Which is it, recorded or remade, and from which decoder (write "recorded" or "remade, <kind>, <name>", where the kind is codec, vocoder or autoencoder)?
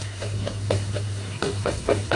remade, codec, SNAC